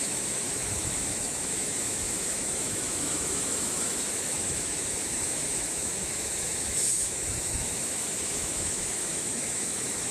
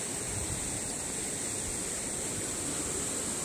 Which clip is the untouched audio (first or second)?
second